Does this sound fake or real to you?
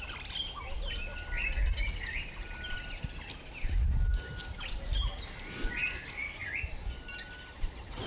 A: real